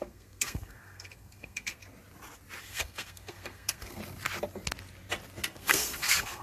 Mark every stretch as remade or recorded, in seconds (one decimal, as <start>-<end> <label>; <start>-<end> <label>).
0.0-1.8 remade; 1.8-2.6 recorded; 2.6-4.0 remade; 4.0-5.4 recorded; 5.4-6.4 remade